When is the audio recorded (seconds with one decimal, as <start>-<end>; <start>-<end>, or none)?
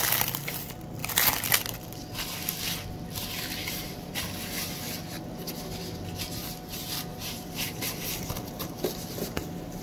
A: 0.0-3.6; 4.1-7.1